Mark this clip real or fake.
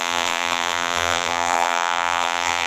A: fake